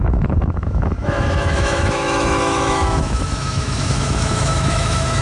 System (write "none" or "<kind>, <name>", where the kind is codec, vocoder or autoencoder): autoencoder, DAC-VAE